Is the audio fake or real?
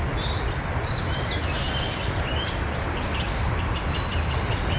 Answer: real